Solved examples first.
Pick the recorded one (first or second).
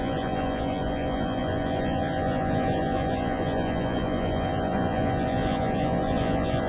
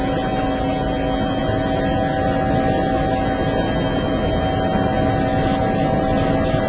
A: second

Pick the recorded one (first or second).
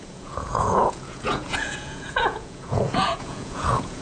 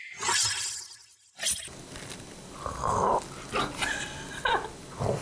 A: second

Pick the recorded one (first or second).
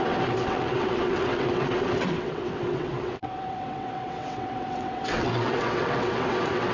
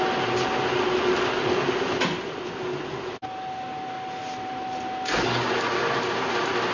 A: second